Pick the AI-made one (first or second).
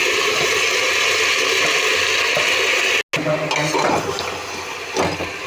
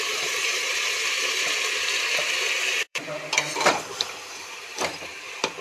second